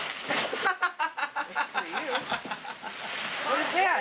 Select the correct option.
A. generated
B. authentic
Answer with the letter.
B